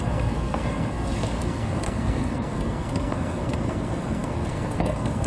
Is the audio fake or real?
fake